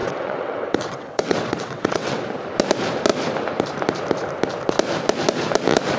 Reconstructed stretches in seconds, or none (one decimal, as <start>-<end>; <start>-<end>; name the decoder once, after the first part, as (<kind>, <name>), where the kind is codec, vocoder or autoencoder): 0.0-2.2 (vocoder, WaveNeXt)